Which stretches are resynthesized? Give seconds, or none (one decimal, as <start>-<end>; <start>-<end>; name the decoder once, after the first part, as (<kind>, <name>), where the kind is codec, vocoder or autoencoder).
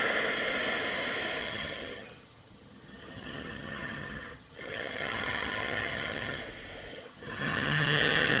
1.4-6.4 (vocoder, HiFi-GAN); 6.9-8.4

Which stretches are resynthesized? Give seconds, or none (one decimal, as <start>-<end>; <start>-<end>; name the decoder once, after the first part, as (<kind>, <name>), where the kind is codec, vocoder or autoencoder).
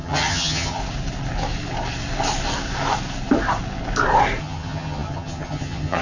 0.0-0.8 (vocoder, HiFi-GAN); 4.4-6.0